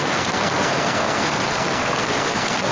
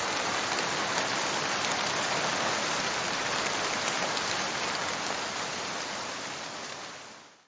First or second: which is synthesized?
first